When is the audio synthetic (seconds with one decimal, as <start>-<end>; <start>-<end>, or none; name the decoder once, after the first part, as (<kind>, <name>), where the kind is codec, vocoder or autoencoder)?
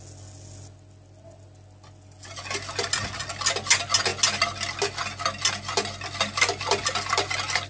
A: none